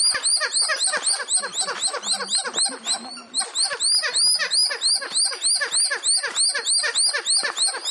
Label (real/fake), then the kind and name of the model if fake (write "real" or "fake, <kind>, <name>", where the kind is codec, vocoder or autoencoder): real